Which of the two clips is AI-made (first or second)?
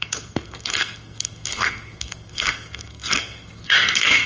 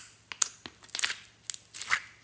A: first